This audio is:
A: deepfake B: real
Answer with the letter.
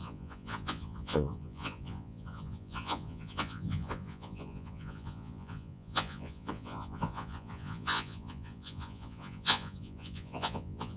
A